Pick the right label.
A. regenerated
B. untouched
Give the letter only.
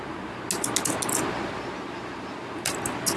B